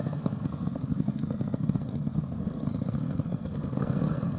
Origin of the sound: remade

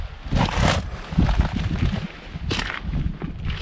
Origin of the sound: recorded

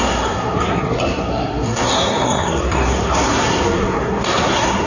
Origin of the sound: remade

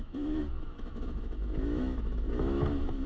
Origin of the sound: remade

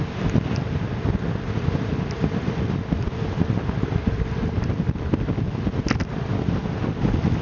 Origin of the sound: recorded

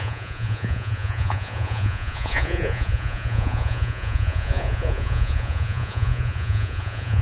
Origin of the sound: remade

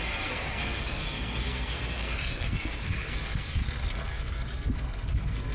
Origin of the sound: remade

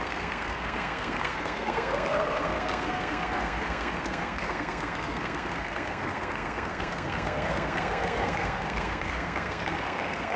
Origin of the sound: remade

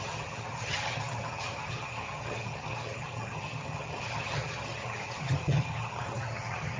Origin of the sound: remade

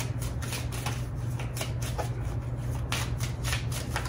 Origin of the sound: recorded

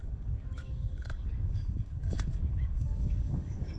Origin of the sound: remade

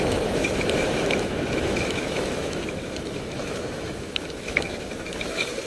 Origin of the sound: remade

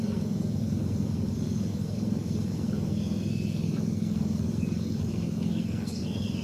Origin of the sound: remade